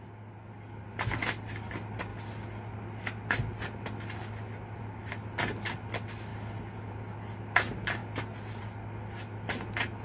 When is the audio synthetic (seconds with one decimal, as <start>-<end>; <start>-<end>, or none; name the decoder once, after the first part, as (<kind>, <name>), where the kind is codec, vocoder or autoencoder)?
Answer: none